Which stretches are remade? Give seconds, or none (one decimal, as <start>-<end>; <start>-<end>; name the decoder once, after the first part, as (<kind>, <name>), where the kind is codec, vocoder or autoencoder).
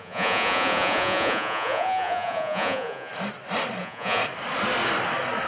0.0-3.1 (vocoder, Vocos); 3.8-4.2